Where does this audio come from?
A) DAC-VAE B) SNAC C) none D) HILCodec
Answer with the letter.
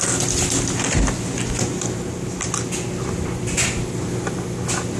C